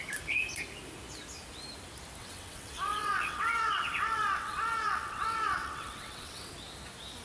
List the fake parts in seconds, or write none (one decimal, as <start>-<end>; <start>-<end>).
2.2-6.5